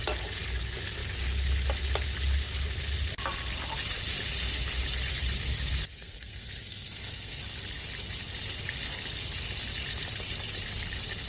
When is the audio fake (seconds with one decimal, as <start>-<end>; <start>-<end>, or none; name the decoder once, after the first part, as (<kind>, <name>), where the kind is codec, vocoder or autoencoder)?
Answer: 5.9-7.4 (codec, SNAC)